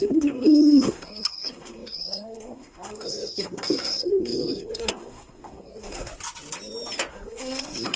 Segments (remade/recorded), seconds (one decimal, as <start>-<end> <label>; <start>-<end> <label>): 0.0-6.1 remade; 6.1-7.1 recorded; 7.1-8.0 remade